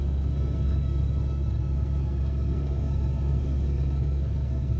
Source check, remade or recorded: remade